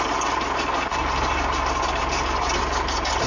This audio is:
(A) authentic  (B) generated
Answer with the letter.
A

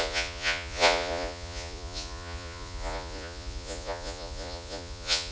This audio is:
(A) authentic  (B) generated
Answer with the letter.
B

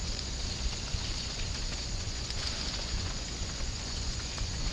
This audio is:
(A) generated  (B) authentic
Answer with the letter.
A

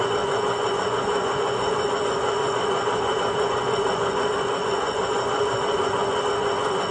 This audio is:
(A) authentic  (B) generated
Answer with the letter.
B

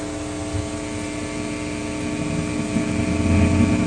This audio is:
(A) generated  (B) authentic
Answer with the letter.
B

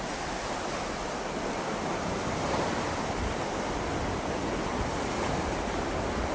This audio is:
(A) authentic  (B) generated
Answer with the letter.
A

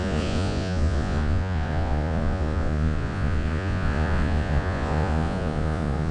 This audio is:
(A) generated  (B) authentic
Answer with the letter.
A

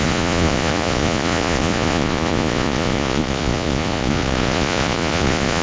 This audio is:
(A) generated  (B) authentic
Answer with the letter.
A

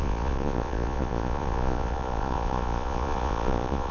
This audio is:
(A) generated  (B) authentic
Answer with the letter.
A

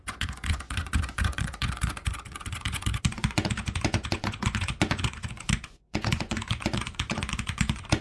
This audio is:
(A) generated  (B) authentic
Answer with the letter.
A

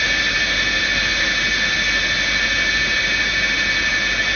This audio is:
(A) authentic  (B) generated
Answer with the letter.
A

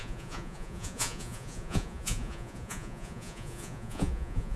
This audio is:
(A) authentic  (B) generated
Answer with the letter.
B